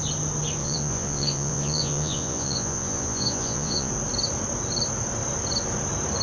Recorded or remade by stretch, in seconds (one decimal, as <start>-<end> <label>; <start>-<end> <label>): 0.0-0.6 recorded; 0.6-3.9 remade; 3.9-6.2 recorded